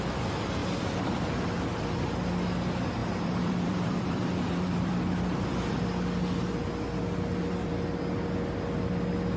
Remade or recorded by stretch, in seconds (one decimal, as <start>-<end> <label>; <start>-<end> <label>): 0.0-3.0 recorded; 3.0-5.8 remade; 5.8-9.4 recorded